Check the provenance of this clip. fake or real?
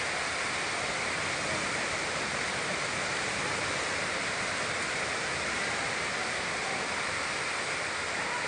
real